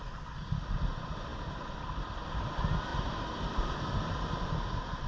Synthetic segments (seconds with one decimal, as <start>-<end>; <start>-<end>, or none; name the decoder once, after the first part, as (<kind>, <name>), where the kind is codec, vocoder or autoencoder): none